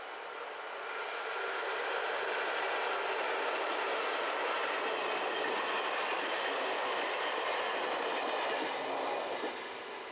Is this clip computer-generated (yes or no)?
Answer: no